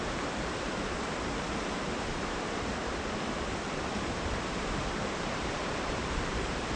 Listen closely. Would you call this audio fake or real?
fake